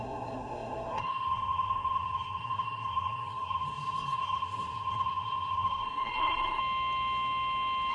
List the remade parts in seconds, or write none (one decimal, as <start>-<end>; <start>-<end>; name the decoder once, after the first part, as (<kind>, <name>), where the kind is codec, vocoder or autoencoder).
0.0-6.6 (codec, SNAC)